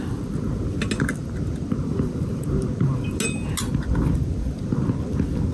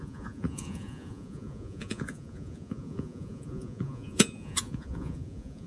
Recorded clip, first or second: first